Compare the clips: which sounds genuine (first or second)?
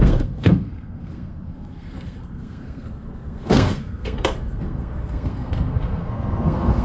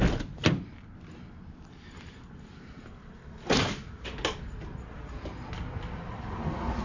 second